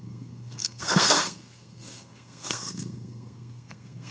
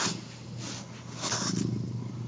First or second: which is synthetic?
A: first